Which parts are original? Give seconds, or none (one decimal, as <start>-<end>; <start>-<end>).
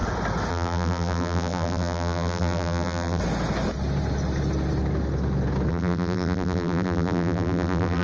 0.0-0.5; 3.2-5.7